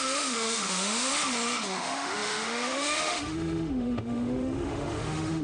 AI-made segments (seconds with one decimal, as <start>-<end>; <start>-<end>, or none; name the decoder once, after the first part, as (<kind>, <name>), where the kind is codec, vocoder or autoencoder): 0.0-1.1 (autoencoder, DAC-VAE); 1.7-5.4